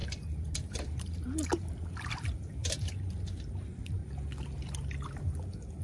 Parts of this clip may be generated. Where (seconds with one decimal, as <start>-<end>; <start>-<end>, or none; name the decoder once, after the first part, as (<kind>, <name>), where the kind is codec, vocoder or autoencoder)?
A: 0.0-4.0 (vocoder, BigVGAN v2)